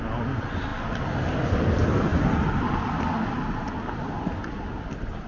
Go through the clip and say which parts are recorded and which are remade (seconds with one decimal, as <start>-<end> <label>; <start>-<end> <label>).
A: 0.0-5.3 recorded